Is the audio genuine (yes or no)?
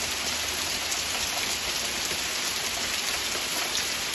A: yes